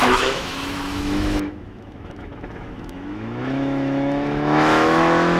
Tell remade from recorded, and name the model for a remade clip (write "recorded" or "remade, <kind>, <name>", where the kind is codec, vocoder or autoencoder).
remade, autoencoder, DAC-VAE